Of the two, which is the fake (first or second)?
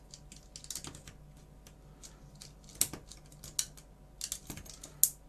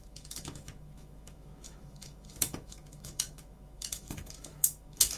second